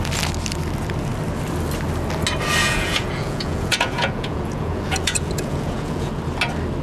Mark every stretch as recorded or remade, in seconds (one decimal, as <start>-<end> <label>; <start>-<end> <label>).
0.0-2.6 recorded; 2.6-6.1 remade; 6.1-6.8 recorded